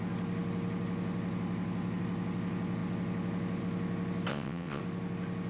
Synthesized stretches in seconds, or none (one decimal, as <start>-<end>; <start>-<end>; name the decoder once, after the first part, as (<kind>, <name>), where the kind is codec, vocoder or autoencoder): 4.3-4.8 (vocoder, WaveNeXt)